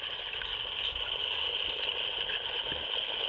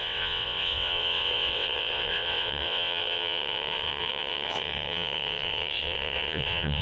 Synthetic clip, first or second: second